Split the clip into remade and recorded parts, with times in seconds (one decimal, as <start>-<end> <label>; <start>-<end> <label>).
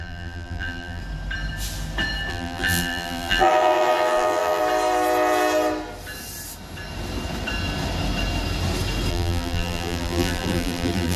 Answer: 0.0-1.0 remade; 1.0-2.3 recorded; 2.3-4.6 remade; 4.6-9.1 recorded; 9.1-11.2 remade